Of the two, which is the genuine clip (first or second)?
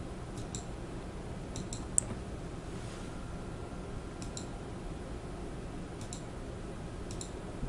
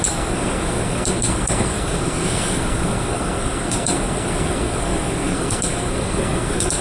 first